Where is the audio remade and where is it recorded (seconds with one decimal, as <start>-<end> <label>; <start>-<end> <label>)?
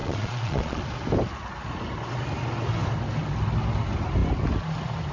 0.0-0.8 remade; 0.8-5.1 recorded